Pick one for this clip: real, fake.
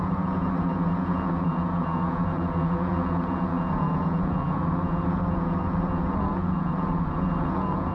fake